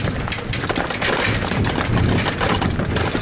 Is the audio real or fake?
real